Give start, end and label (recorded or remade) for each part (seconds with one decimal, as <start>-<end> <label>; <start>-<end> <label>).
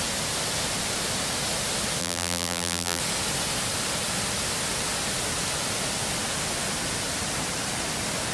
0.0-2.0 recorded; 2.0-3.0 remade; 3.0-8.3 recorded